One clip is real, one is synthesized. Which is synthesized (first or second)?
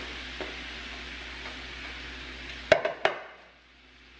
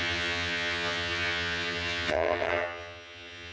second